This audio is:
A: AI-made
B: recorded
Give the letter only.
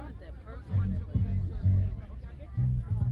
B